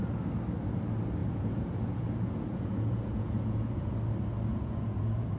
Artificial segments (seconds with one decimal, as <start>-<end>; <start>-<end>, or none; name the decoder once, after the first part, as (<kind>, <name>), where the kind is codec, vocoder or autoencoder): 1.2-3.9 (vocoder, Vocos); 4.5-5.4